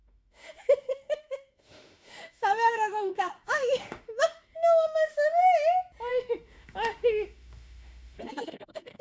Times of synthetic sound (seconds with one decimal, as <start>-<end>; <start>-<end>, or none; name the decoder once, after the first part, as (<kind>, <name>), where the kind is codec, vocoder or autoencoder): 0.0-5.4 (autoencoder, DAC-VAE); 6.1-9.0